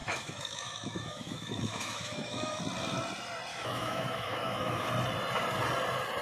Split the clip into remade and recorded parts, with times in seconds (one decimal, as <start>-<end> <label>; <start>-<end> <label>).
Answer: 0.0-2.6 remade; 2.6-3.5 recorded; 3.5-4.9 remade; 4.9-6.2 recorded